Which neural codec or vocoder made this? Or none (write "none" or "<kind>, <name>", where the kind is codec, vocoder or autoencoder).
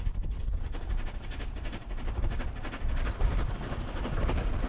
none